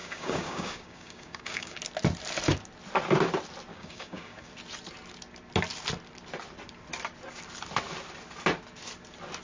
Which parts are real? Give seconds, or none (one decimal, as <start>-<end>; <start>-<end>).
1.8-3.7; 4.5-9.4